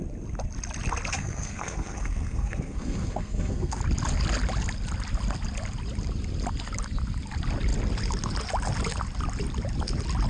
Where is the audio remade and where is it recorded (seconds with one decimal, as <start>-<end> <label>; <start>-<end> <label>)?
0.0-1.1 recorded; 1.1-3.8 remade; 3.8-10.3 recorded